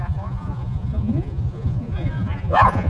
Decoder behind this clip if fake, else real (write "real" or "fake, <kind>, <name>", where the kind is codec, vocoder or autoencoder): fake, vocoder, Vocos